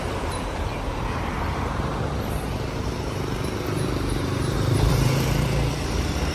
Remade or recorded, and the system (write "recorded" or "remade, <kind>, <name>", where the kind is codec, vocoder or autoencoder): remade, vocoder, BigVGAN v2